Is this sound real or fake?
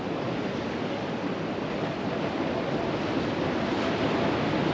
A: real